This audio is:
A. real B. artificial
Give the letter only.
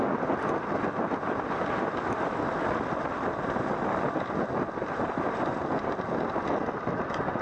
A